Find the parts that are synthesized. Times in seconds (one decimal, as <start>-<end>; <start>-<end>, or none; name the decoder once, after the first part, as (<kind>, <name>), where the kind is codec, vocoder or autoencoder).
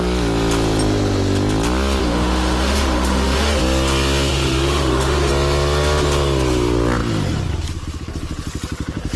2.0-3.6 (autoencoder, DAC-VAE); 4.3-5.3